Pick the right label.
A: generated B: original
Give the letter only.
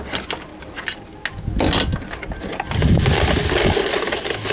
B